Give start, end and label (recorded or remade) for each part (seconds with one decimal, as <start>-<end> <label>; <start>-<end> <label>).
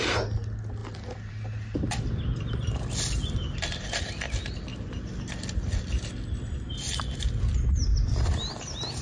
0.0-0.8 recorded; 0.8-2.5 remade; 2.5-7.9 recorded; 7.9-8.5 remade; 8.5-9.0 recorded